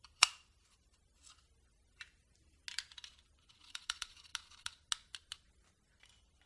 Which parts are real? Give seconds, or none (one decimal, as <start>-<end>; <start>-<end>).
1.1-3.5; 4.3-5.7